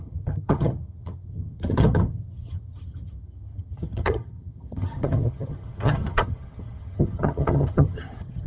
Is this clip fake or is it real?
fake